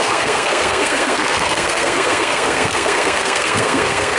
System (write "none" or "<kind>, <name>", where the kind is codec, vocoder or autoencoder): codec, SNAC